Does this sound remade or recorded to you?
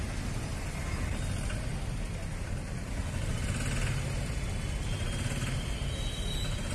recorded